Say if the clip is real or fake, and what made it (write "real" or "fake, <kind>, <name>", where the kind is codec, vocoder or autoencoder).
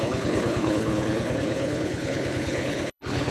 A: fake, codec, HILCodec